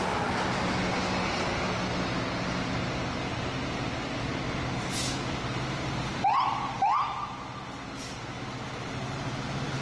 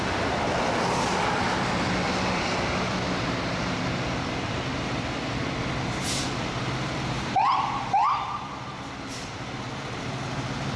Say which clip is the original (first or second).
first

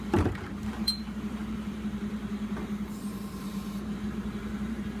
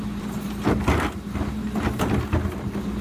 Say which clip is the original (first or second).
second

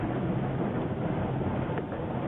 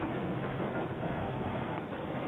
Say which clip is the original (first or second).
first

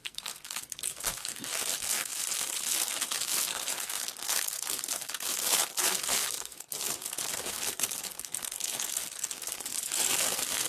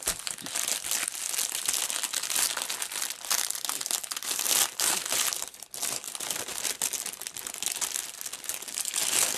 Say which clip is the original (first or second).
second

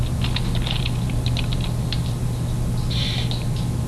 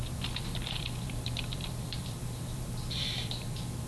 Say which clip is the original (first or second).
first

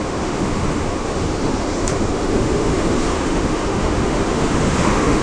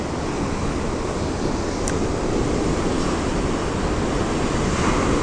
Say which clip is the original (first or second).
second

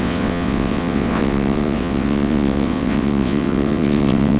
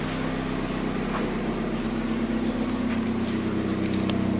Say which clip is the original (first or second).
second